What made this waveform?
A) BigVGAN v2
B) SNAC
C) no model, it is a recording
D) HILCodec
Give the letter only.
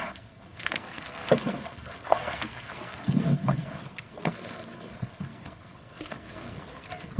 B